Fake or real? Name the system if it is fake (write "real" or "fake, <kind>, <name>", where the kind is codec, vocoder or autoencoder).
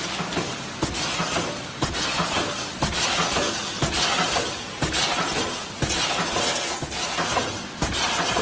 real